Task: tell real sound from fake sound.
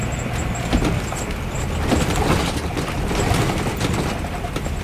real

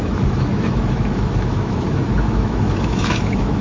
fake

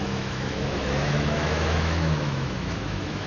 fake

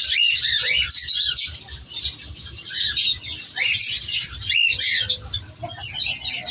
real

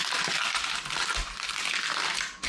real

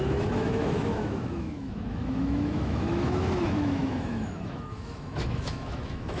fake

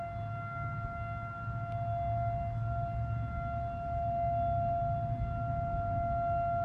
real